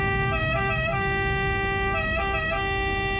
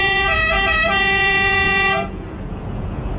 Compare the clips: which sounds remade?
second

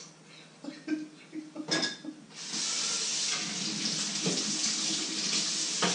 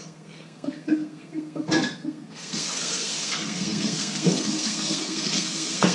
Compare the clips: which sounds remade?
second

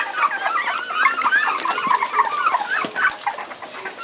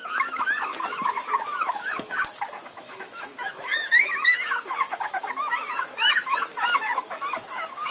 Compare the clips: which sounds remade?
second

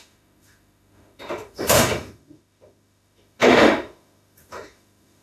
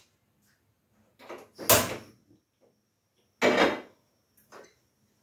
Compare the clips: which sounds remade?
first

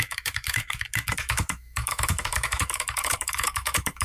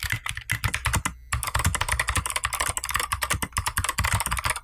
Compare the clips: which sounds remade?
first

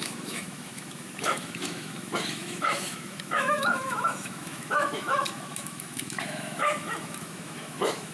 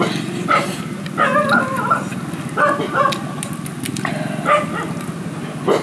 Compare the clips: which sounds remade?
first